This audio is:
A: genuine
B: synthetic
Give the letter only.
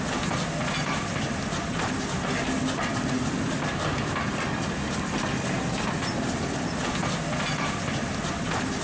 A